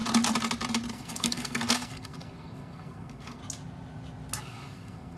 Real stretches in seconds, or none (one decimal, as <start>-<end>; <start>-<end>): 0.0-0.9; 3.4-4.4